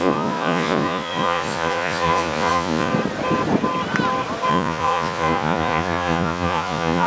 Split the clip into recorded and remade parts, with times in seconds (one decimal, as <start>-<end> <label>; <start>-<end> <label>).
0.0-2.9 remade; 2.9-4.5 recorded; 4.5-7.1 remade